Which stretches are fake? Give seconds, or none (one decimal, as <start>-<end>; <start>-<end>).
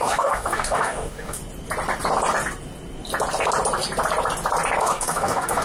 0.0-1.4; 4.8-5.6